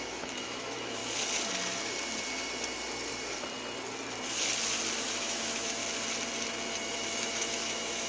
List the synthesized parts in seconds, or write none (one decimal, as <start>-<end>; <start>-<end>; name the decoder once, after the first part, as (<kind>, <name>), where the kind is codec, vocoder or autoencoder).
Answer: 0.0-1.0 (autoencoder, DAC-VAE); 5.0-5.8; 6.8-8.1